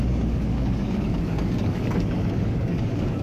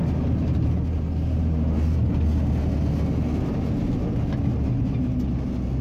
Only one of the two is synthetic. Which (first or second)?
first